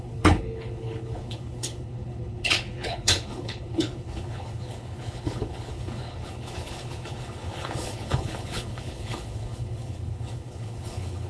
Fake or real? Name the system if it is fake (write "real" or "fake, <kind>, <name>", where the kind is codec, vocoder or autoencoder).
fake, codec, HILCodec